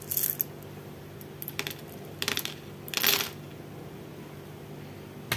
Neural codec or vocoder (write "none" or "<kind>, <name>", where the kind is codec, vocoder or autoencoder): none